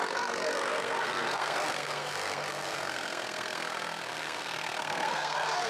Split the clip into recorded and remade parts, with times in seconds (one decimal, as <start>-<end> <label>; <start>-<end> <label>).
0.0-5.7 remade